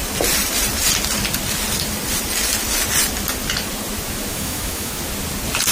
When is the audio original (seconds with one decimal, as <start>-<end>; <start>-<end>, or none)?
0.0-4.3; 5.0-5.7